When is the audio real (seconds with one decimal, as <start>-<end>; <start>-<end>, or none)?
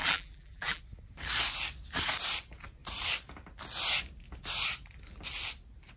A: 0.8-6.0